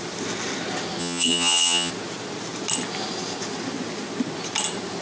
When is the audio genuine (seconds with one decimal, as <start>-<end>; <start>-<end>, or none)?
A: 0.0-1.0; 1.9-5.0